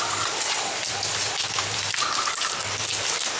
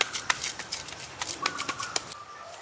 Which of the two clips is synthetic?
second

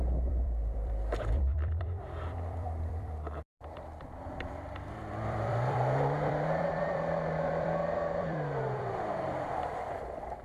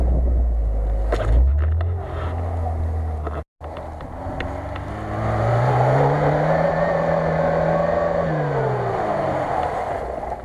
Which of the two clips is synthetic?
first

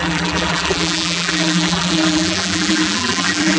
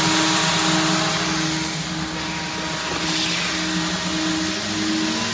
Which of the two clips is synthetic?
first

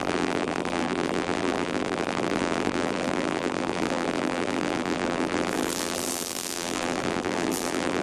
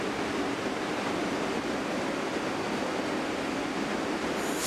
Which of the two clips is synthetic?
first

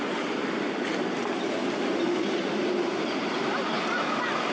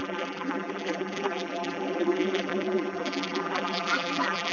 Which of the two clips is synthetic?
second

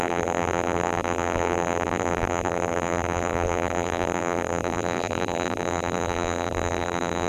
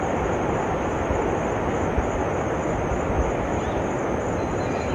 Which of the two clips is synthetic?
first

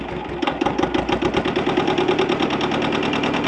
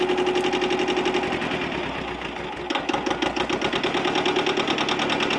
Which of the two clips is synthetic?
first